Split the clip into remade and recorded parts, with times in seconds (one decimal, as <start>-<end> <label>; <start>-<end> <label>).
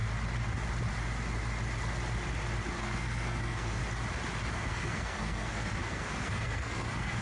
0.0-2.8 recorded; 2.8-3.8 remade; 3.8-4.5 recorded; 4.5-7.2 remade